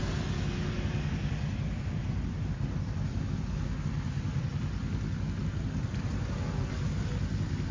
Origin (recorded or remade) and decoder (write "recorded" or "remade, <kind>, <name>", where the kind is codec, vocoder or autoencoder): recorded